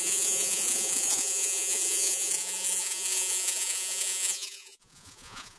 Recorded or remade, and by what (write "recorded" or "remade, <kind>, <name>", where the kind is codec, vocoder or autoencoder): remade, vocoder, Vocos